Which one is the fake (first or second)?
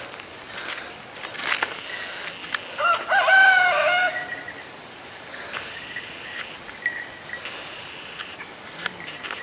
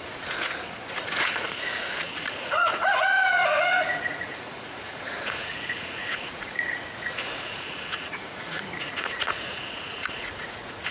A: second